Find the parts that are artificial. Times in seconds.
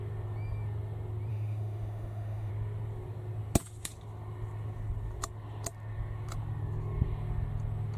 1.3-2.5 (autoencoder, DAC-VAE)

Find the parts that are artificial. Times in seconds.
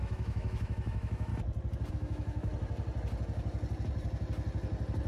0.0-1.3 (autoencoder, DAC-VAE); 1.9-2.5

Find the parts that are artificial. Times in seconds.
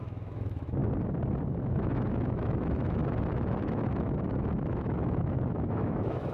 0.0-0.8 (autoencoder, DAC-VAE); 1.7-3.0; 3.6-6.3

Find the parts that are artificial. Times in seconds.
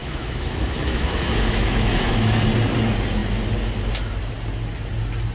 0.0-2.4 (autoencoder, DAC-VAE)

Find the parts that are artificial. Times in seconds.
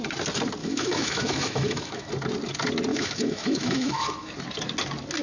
0.6-2.1 (autoencoder, DAC-VAE); 2.9-4.3